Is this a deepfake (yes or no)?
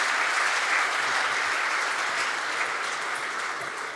no